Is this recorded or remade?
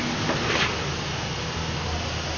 recorded